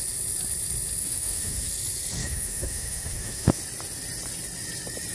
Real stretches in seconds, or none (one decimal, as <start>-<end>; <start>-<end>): 0.0-1.0; 1.7-2.2; 3.6-5.1